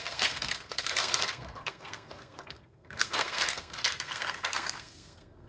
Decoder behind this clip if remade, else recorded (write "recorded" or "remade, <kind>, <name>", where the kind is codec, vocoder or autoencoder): remade, codec, SNAC